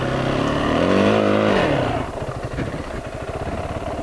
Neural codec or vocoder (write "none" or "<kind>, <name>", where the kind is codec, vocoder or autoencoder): none